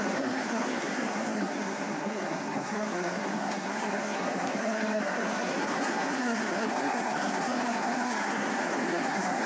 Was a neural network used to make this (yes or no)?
yes